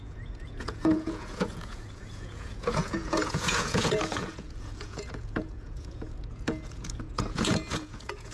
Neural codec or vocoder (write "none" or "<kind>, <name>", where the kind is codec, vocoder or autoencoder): vocoder, Vocos